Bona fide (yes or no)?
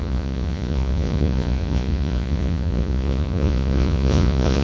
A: no